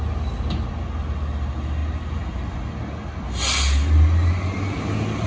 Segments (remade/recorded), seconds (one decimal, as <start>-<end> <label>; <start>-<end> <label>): 0.0-5.3 recorded